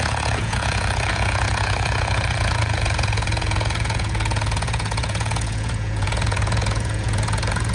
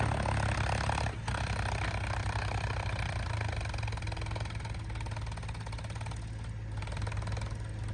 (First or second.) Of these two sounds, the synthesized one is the first